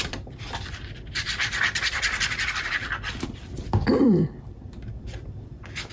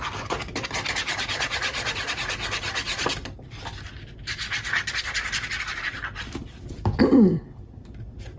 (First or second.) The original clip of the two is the second